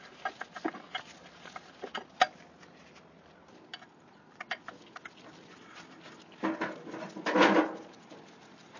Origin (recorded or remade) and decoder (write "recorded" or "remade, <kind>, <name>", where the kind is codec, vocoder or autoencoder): recorded